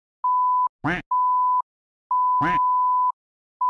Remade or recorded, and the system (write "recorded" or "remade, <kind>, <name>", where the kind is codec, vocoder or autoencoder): recorded